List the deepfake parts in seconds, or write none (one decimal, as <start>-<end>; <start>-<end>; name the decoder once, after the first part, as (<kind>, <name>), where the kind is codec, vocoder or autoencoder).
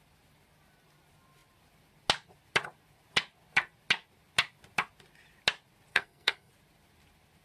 5.9-6.5 (codec, SNAC)